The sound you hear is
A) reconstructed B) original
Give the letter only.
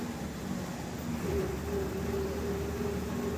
B